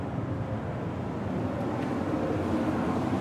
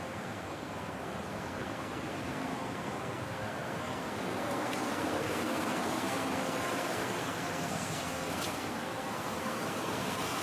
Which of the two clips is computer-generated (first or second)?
second